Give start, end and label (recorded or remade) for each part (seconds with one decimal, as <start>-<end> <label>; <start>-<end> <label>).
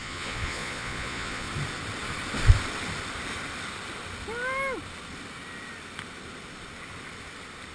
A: 0.0-1.5 remade; 1.5-7.7 recorded